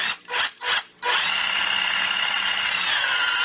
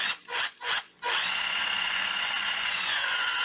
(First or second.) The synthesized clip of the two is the second